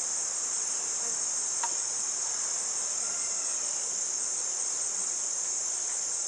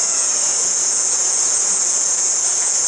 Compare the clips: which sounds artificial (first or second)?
second